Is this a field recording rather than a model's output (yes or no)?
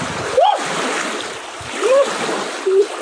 no